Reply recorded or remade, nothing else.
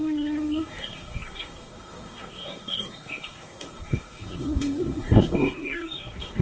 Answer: remade